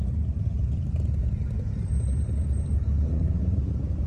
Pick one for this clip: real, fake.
fake